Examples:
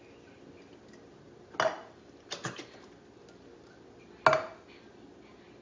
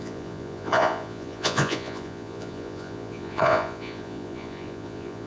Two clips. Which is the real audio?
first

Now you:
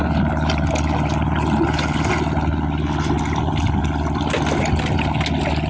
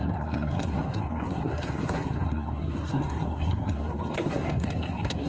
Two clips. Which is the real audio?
first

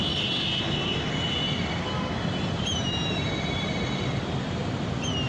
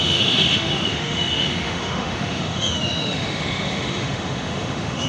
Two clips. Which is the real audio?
first